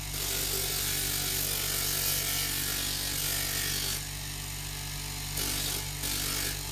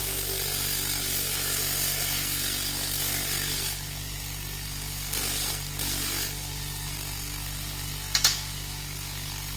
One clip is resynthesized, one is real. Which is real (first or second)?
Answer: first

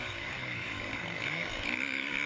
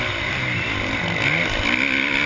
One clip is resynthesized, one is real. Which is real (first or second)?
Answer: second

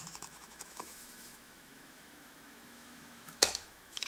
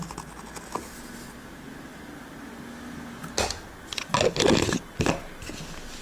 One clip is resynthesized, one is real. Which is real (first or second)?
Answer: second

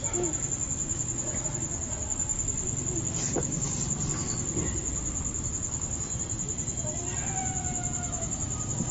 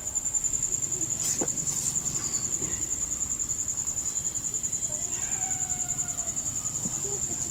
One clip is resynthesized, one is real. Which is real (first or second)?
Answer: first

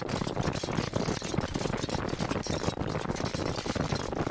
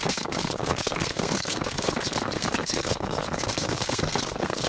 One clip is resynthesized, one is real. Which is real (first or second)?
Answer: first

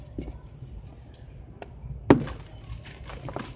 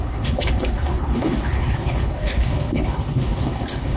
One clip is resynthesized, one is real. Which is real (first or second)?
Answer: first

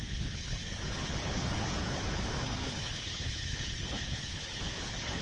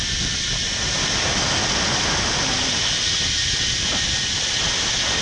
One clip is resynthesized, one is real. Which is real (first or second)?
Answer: second